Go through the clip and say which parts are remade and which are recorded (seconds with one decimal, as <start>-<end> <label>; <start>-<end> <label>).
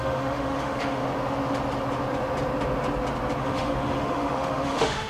0.0-1.0 remade; 1.0-3.4 recorded; 3.4-5.1 remade